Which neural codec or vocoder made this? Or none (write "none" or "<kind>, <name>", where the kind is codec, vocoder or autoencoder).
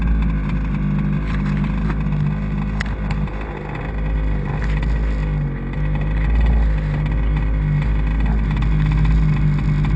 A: none